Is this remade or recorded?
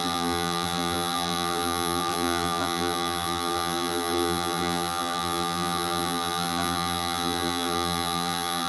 remade